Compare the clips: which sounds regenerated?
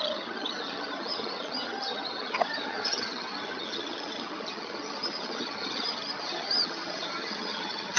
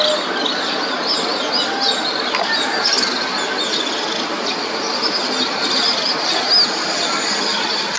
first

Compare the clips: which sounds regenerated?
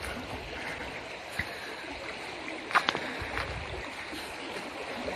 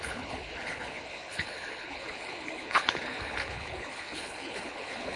second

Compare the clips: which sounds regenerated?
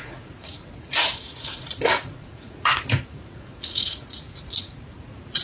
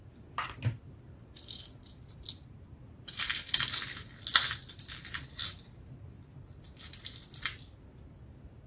first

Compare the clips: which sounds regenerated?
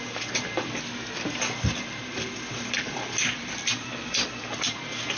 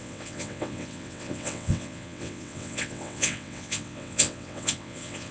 second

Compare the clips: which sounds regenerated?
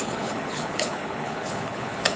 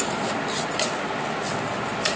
first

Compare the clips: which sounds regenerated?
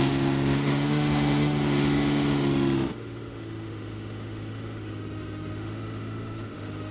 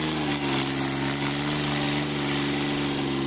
first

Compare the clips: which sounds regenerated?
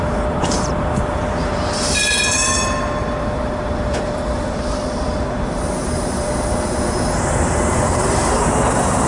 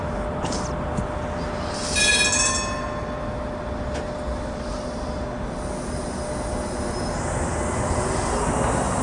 first